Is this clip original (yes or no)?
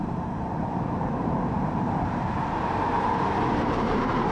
no